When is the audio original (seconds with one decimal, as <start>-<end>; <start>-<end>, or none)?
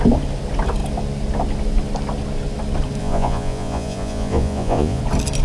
0.0-3.0; 5.0-5.4